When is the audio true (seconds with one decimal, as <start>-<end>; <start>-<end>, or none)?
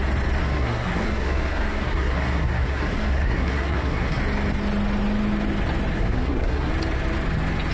0.0-0.4; 4.2-5.9; 6.7-7.7